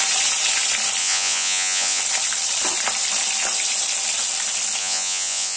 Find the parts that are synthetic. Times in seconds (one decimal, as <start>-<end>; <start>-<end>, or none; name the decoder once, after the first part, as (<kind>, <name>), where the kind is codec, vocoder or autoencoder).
1.0-2.0 (vocoder, Vocos); 4.8-5.6